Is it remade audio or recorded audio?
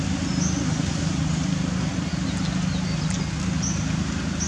recorded